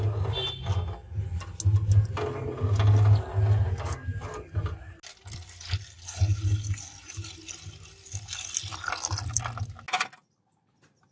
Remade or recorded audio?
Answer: recorded